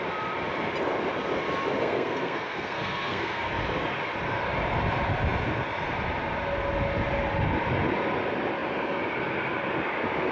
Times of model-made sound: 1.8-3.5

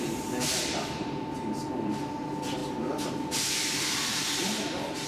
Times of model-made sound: 0.0-5.1

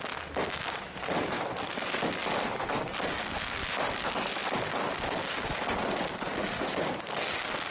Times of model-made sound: none

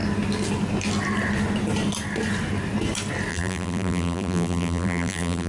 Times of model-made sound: 3.3-5.5